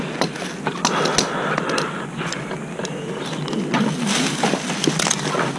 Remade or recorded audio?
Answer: recorded